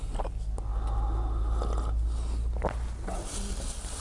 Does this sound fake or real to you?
real